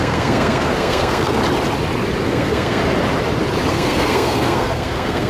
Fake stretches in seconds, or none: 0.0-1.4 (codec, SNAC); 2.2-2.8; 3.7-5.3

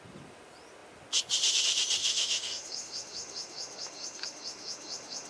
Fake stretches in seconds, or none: 2.0-5.3 (autoencoder, DAC-VAE)